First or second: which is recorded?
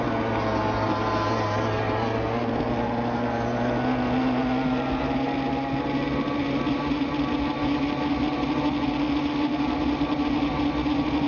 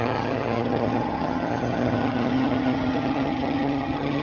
first